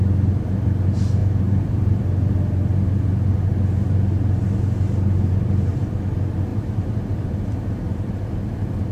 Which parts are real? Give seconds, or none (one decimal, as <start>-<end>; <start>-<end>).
0.0-1.2; 2.0-6.5; 8.1-8.9